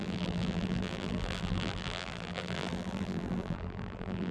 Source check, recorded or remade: remade